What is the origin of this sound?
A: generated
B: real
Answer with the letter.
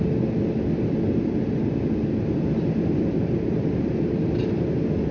B